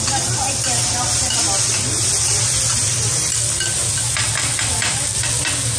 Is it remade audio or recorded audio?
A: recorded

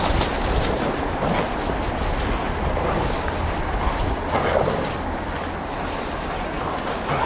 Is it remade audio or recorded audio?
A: recorded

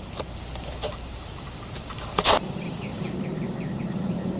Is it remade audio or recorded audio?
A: remade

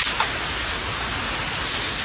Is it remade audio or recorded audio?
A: recorded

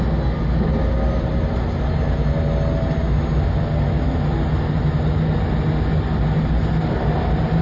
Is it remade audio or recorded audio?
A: recorded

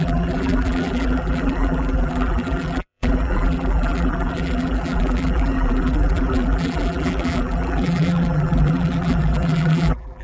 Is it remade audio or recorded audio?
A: remade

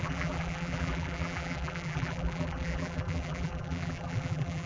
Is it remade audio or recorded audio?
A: remade